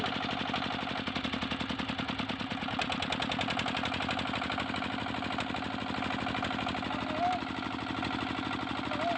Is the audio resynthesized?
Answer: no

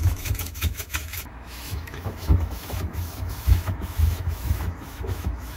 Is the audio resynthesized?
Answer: yes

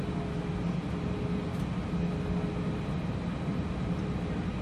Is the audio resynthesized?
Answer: no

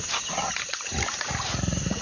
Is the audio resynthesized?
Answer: no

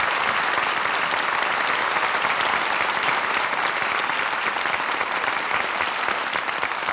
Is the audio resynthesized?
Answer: yes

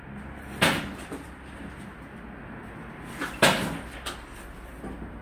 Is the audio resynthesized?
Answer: no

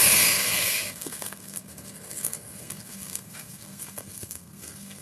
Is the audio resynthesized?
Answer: yes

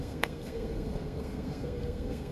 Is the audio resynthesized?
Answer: yes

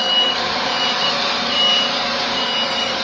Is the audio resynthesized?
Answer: yes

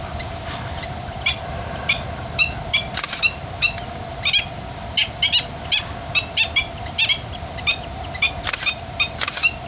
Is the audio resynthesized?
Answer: no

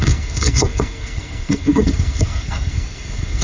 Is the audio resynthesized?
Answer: yes